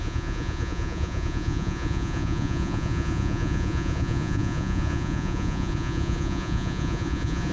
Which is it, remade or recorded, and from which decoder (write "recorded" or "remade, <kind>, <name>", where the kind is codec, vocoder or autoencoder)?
remade, vocoder, Vocos